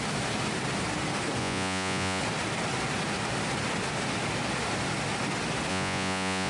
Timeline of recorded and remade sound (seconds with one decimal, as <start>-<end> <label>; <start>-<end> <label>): 0.0-1.4 recorded; 1.4-2.2 remade; 2.2-5.7 recorded; 5.7-6.5 remade